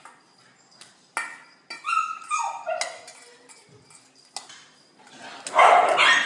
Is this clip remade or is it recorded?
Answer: recorded